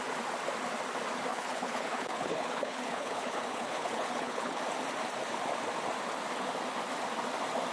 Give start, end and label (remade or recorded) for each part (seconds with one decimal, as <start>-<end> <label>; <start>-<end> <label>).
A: 0.0-1.3 recorded; 1.3-4.6 remade; 4.6-7.7 recorded